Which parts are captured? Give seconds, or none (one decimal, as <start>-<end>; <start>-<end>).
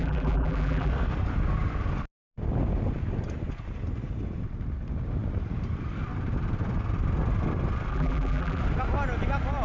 0.9-7.9; 8.6-9.6